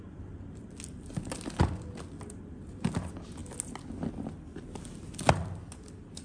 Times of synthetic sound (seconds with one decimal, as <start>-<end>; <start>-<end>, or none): none